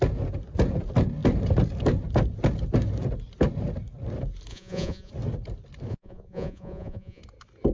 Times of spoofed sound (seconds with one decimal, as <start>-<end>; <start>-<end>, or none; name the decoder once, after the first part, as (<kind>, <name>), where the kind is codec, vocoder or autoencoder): 4.5-5.1 (vocoder, Vocos); 5.9-7.2